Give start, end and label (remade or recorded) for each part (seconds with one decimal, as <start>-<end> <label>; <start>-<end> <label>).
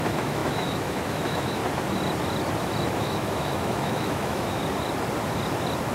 0.0-1.6 remade; 1.6-2.9 recorded; 2.9-4.6 remade; 4.6-5.9 recorded